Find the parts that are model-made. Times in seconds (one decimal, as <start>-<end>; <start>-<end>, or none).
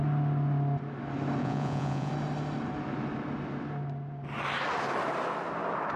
1.4-2.1